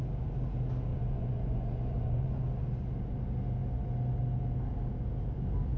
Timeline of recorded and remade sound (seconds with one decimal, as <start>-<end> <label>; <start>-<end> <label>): 0.0-0.9 recorded; 0.9-2.4 remade; 2.4-5.8 recorded